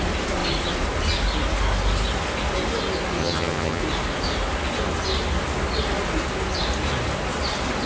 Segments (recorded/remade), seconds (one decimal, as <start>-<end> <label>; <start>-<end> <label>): 0.0-3.2 recorded; 3.2-3.8 remade; 3.8-7.9 recorded